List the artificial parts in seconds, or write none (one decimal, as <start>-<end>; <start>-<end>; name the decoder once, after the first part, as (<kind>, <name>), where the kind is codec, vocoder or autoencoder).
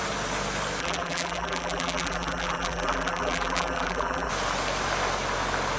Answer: 0.8-4.3 (vocoder, BigVGAN v2)